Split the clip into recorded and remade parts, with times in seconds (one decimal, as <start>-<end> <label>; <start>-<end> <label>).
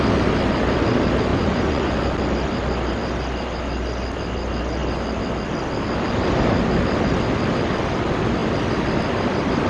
0.0-1.3 recorded; 1.3-1.9 remade; 1.9-9.7 recorded